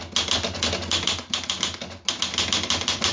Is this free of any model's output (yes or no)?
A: yes